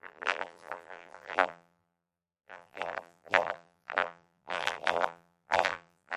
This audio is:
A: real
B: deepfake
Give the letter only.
B